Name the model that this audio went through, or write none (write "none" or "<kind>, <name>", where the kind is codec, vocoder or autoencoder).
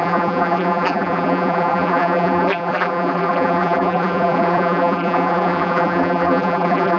vocoder, BigVGAN v2